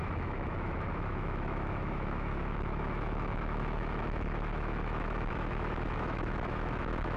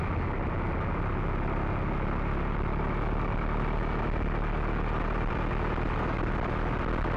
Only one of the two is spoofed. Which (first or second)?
first